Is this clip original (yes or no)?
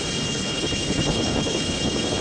no